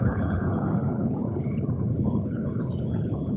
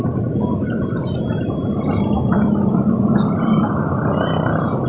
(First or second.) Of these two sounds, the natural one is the second